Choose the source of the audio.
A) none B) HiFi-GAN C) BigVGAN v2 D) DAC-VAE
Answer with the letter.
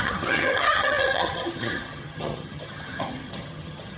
B